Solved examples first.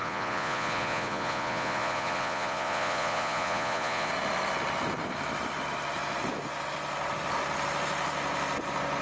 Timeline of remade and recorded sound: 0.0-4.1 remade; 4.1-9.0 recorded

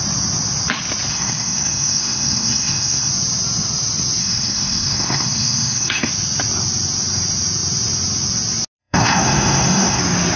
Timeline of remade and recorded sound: 0.0-1.1 recorded; 1.1-3.1 remade; 3.1-4.2 recorded; 4.2-6.1 remade; 6.1-8.8 recorded; 8.8-10.0 remade; 10.0-10.4 recorded